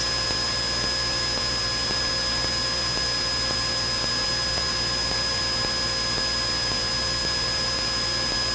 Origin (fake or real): real